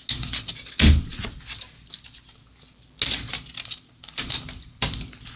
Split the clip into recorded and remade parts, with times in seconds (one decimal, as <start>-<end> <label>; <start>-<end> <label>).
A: 0.0-5.4 recorded